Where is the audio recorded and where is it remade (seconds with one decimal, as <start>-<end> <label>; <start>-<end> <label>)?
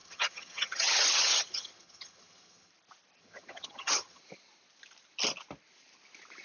0.0-2.7 remade; 2.7-3.2 recorded; 3.2-4.2 remade; 4.2-6.4 recorded